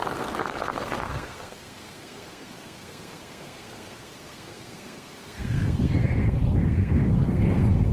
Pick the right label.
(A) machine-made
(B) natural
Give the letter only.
A